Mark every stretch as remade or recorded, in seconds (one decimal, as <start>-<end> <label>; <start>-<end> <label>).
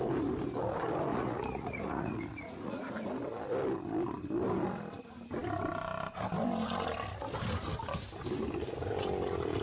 0.0-1.1 recorded; 1.1-2.9 remade; 2.9-9.6 recorded